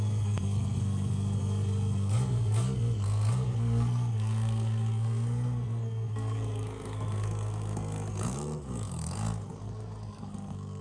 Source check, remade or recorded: remade